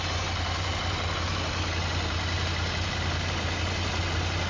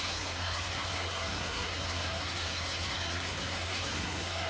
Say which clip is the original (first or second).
first